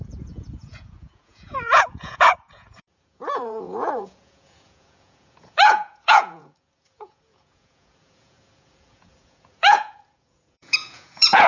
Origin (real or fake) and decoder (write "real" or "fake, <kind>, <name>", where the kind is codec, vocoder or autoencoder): fake, vocoder, Vocos